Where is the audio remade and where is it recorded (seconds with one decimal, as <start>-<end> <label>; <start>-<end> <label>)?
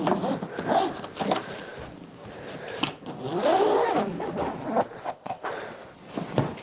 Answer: 0.0-5.0 recorded; 5.0-5.5 remade; 5.5-6.6 recorded